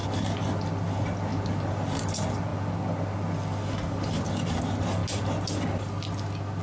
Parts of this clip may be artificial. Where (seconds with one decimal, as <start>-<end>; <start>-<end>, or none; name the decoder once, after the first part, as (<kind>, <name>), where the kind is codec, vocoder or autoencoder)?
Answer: none